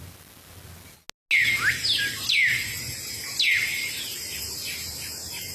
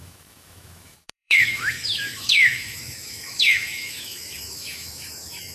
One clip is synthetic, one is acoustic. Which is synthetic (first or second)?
second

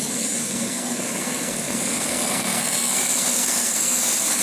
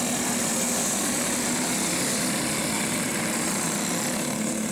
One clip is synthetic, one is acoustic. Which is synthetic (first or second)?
first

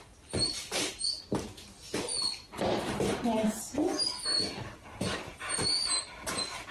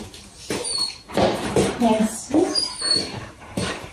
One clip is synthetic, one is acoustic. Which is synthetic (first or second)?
second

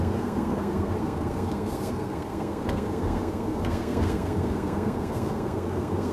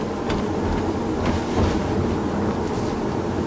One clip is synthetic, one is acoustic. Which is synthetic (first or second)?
first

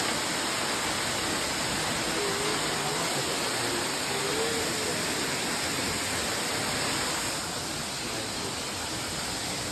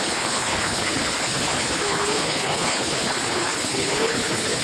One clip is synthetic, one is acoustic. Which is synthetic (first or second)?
second